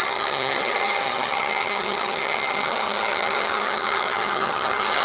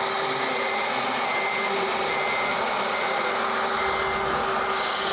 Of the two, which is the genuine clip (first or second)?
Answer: second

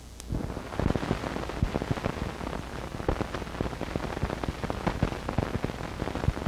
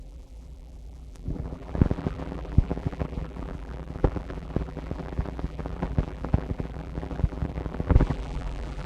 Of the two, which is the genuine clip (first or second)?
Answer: first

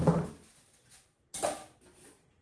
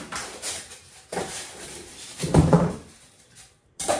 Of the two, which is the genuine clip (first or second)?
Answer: first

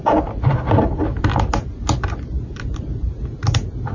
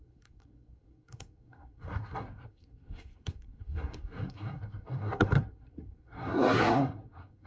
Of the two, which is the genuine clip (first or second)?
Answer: first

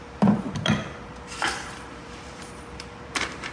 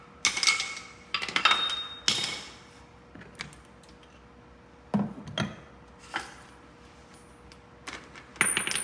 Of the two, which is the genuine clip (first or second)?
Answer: second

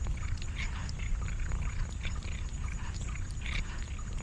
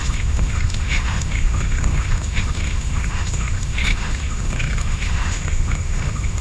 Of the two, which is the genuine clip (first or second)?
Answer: first